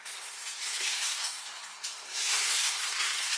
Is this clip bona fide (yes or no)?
no